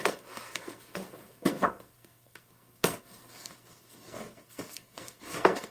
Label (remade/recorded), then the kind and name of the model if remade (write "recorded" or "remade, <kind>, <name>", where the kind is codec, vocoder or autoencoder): remade, codec, SNAC